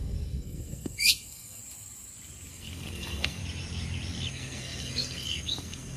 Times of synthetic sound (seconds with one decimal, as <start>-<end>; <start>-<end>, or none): 0.0-1.6; 2.5-3.4; 4.3-6.0

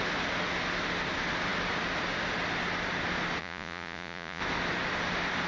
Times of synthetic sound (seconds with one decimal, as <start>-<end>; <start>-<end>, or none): 3.4-4.4

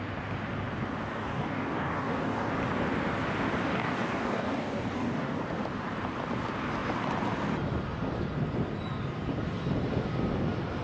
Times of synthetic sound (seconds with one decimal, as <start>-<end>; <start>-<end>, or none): 1.1-2.5; 3.7-5.4

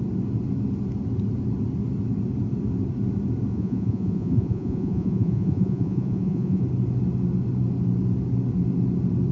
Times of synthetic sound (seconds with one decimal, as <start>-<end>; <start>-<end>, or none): 3.5-6.6

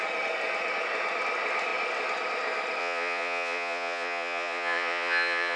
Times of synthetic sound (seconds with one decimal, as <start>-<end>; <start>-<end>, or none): 2.8-5.6

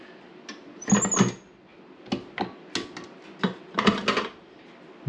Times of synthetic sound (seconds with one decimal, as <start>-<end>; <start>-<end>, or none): none

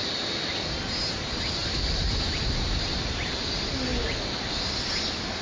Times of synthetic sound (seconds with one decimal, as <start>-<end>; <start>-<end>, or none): 1.6-3.2